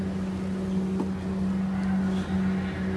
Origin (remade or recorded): recorded